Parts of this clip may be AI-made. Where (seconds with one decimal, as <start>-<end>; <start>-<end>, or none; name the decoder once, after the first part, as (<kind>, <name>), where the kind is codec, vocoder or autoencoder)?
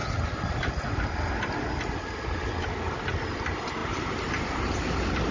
none